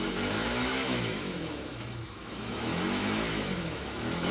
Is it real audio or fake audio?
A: fake